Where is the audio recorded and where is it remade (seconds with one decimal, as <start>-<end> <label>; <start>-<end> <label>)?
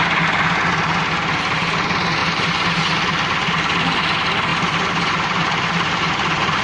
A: 0.0-2.2 recorded; 2.2-2.8 remade; 2.8-4.5 recorded; 4.5-6.6 remade